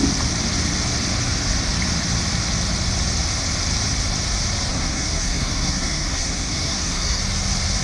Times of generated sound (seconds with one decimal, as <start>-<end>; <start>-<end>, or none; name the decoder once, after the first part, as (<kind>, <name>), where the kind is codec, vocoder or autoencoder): 4.7-7.2 (codec, SNAC)